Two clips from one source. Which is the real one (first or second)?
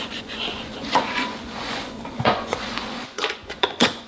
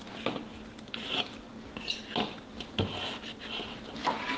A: second